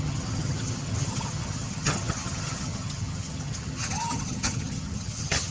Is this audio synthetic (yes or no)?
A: yes